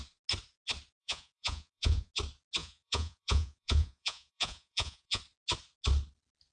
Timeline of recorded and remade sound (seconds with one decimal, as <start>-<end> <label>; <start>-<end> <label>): 0.0-1.0 recorded; 1.0-2.1 remade; 2.1-2.6 recorded; 2.6-5.2 remade; 5.2-6.5 recorded